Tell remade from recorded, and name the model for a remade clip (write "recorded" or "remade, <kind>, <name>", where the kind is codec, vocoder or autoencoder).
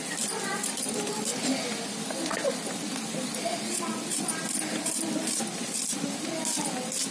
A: recorded